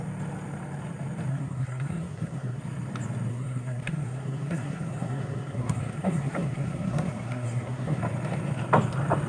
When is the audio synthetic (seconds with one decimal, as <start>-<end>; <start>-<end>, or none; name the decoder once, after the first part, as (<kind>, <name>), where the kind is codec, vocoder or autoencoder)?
1.3-2.6 (codec, SNAC); 3.3-8.0